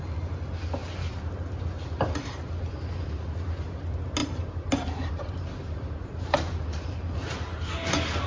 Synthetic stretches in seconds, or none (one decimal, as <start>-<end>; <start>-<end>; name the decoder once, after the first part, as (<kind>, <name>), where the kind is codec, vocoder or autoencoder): 4.2-7.1 (vocoder, BigVGAN v2)